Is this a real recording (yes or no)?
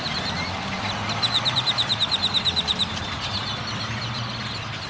no